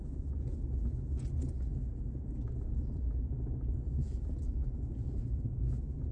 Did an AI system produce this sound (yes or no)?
yes